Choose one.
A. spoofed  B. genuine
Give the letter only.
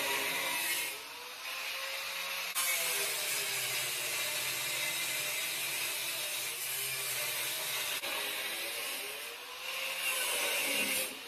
B